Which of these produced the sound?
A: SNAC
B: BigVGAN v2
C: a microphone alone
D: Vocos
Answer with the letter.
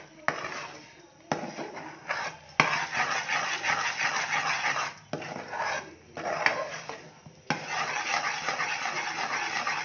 C